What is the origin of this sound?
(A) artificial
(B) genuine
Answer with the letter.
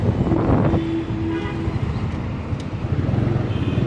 B